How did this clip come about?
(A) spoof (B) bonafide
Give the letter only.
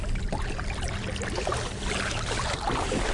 B